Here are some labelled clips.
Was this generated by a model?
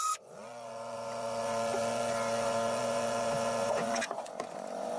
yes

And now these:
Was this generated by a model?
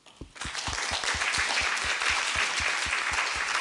no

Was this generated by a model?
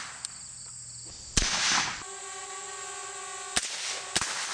no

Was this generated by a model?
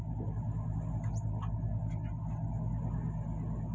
no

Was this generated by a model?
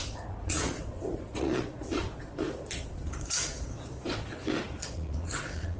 yes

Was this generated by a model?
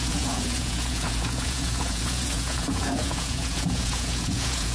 yes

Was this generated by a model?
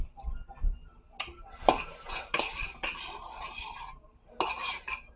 no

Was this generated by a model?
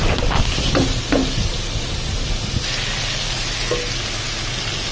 no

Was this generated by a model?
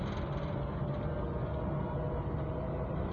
no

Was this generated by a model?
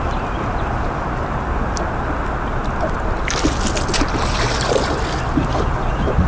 no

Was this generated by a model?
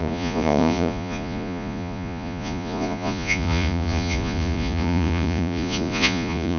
yes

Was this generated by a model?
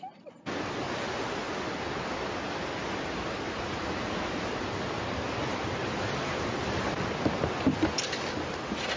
no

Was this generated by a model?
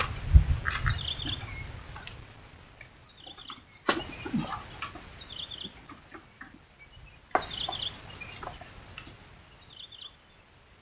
no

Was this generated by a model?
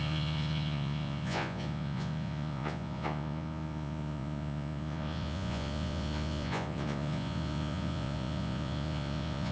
yes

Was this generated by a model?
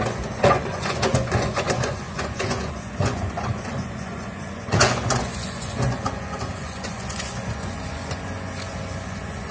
yes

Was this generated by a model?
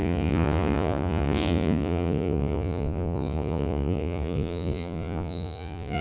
yes